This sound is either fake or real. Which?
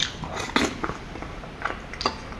real